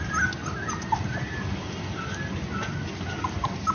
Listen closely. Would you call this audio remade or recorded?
recorded